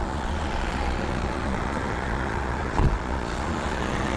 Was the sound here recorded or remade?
remade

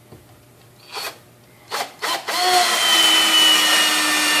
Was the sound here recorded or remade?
recorded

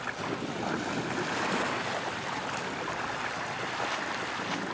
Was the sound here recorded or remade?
recorded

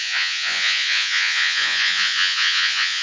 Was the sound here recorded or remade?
remade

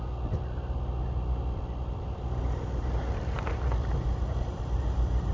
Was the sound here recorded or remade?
recorded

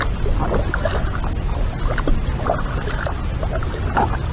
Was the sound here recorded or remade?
recorded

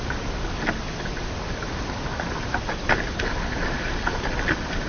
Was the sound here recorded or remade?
recorded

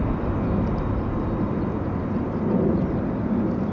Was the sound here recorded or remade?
recorded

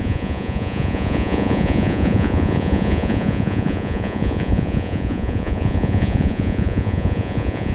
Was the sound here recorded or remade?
remade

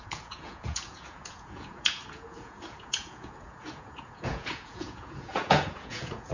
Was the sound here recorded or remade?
remade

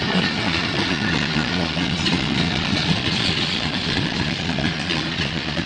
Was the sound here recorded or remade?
remade